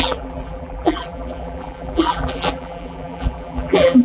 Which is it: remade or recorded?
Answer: remade